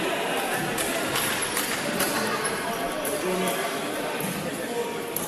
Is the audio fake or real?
real